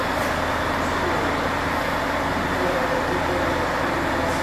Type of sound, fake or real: real